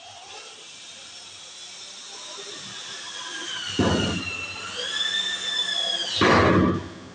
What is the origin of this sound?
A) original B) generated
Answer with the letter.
A